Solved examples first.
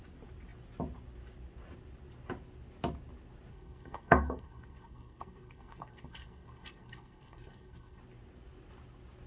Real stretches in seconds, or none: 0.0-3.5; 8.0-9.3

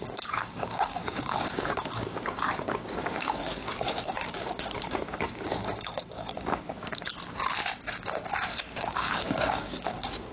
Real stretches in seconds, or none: 7.1-8.6

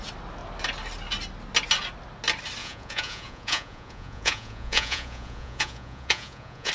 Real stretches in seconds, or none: 0.0-2.6

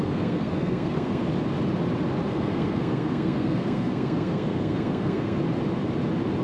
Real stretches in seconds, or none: 1.3-2.3; 5.4-6.4

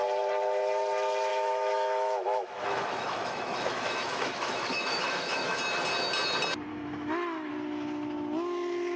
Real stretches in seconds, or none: 0.0-1.3; 5.6-6.7; 7.5-9.0

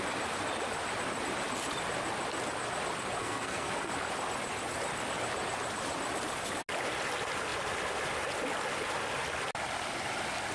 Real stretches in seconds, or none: 0.0-3.2; 3.9-10.5

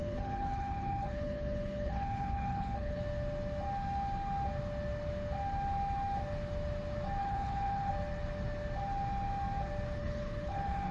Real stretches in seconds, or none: 3.0-7.2; 7.9-10.0

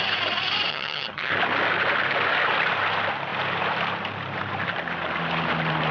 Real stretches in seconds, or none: 0.0-0.7; 1.3-5.9